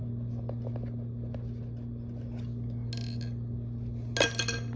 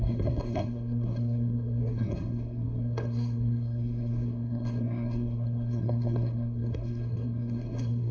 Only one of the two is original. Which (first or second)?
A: first